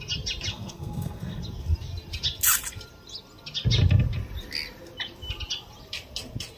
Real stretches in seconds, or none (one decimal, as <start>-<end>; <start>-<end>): 0.0-0.5; 1.4-6.6